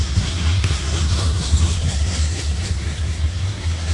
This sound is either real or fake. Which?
fake